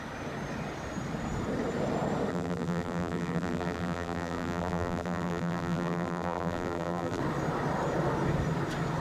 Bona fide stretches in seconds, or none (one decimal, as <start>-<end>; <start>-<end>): 0.0-2.3; 7.2-9.0